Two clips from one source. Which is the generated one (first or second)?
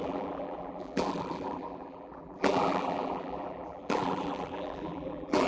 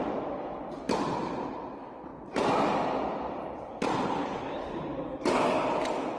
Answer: first